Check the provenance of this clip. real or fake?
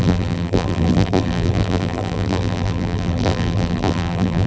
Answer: fake